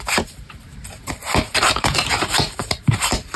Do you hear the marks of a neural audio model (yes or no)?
yes